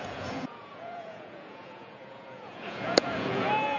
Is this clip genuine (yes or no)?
no